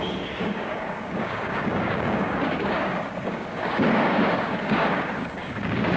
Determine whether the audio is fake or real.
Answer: fake